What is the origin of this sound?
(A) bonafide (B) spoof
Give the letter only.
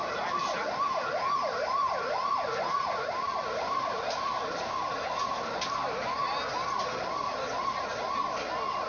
A